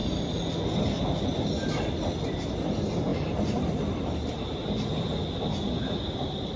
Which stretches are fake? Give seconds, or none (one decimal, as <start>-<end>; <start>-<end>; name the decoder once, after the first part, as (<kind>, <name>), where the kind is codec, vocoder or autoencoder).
none